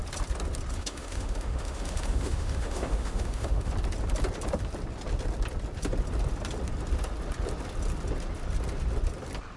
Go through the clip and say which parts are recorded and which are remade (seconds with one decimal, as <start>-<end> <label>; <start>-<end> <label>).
0.0-0.7 recorded; 0.7-3.7 remade; 3.7-9.6 recorded